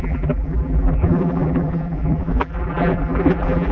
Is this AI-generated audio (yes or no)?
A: yes